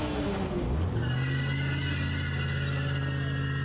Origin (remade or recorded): recorded